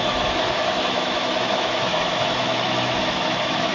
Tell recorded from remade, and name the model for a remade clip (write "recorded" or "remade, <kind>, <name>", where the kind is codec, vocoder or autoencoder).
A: remade, autoencoder, DAC-VAE